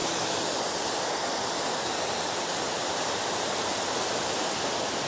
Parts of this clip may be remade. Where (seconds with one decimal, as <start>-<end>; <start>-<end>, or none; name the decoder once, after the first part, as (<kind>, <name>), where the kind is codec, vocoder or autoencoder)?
2.2-3.7 (vocoder, BigVGAN v2)